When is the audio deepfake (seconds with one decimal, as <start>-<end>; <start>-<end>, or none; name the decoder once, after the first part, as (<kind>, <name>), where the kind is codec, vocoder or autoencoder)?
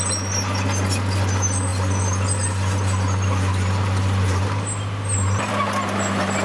none